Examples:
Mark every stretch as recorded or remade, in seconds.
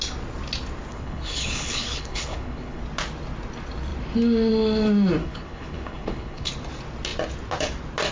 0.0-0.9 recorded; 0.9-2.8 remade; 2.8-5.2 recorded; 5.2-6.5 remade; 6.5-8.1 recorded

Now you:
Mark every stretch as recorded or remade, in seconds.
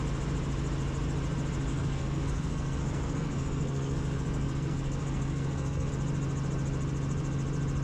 0.0-1.7 recorded; 1.7-5.9 remade; 5.9-7.8 recorded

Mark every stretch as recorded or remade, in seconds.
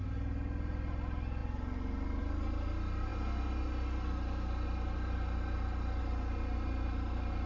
0.0-7.5 recorded